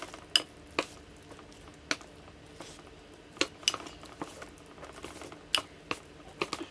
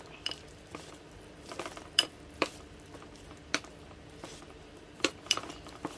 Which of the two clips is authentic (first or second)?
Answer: first